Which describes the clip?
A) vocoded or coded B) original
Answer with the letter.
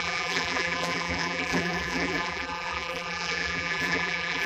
A